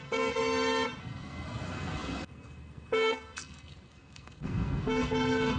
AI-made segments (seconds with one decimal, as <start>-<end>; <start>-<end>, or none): 0.0-0.4; 1.0-5.6